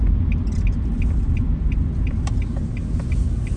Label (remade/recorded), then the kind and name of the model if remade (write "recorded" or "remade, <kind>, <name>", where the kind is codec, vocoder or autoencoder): recorded